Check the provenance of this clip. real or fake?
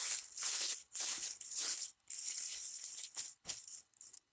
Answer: fake